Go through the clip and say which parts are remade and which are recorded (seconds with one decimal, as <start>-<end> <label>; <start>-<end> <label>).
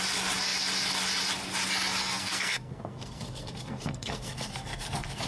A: 0.0-2.0 recorded; 2.0-5.3 remade